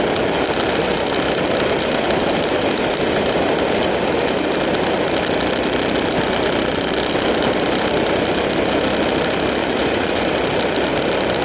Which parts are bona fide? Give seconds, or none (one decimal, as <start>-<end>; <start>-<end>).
0.0-9.6; 10.3-11.4